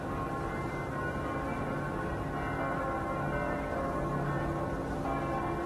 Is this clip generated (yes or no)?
no